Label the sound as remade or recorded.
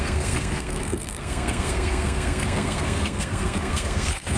remade